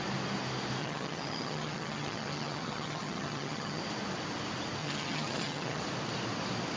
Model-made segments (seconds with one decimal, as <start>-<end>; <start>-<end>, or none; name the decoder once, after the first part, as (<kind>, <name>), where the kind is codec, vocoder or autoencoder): 0.8-3.8 (vocoder, HiFi-GAN); 4.8-5.8